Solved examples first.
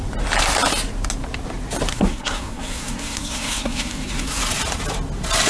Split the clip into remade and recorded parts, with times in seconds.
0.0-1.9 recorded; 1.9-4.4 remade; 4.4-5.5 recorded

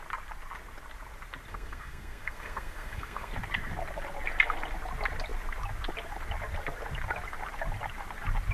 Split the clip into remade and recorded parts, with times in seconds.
0.0-1.5 recorded; 1.5-3.3 remade; 3.3-8.5 recorded

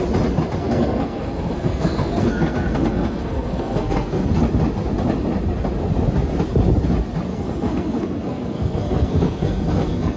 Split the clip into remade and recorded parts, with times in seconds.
0.0-0.6 recorded; 0.6-4.4 remade; 4.4-7.3 recorded; 7.3-10.2 remade

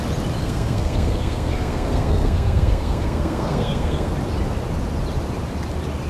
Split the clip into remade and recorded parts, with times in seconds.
0.0-0.4 recorded; 0.4-4.1 remade; 4.1-6.1 recorded

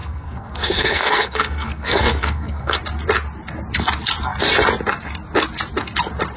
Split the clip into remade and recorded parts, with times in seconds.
0.0-2.8 remade; 2.8-6.4 recorded

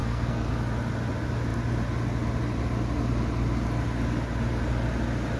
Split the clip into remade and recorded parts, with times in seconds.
0.0-0.5 remade; 0.5-5.4 recorded